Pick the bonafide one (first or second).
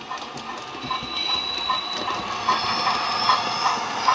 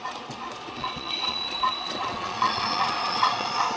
first